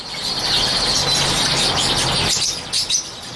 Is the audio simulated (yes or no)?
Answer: no